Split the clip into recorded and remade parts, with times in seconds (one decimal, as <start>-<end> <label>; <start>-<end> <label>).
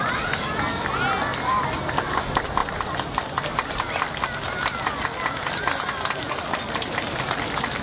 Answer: 0.0-7.8 recorded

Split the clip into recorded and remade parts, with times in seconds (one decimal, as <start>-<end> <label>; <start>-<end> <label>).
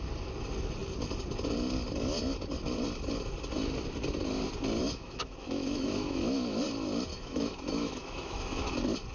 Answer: 0.0-4.8 recorded; 4.8-6.6 remade; 6.6-7.1 recorded; 7.1-8.7 remade; 8.7-9.1 recorded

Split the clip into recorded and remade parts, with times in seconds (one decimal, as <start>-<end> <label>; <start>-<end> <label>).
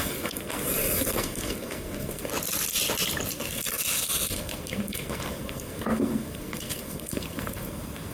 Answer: 0.0-2.3 remade; 2.3-3.3 recorded; 3.3-8.1 remade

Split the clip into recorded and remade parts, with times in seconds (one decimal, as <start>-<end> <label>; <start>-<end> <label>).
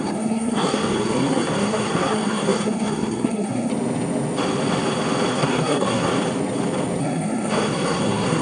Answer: 0.0-3.7 remade; 3.7-5.3 recorded; 5.3-6.1 remade; 6.1-7.0 recorded; 7.0-8.4 remade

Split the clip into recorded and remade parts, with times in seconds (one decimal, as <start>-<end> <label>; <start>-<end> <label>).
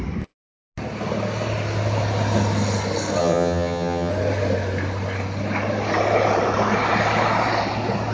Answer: 0.0-3.2 recorded; 3.2-4.1 remade; 4.1-8.1 recorded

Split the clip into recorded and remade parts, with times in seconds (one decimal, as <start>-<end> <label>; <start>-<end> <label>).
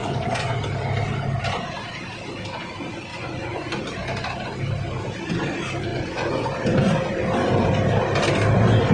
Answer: 0.0-0.6 remade; 0.6-3.1 recorded; 3.1-3.7 remade; 3.7-5.9 recorded; 5.9-6.6 remade; 6.6-8.9 recorded